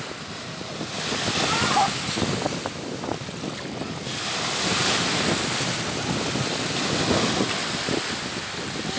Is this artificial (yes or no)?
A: no